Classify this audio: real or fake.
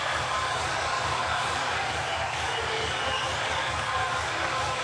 fake